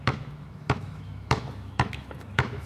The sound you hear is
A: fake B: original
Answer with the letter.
A